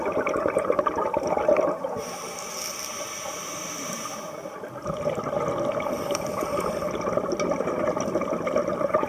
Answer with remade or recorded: recorded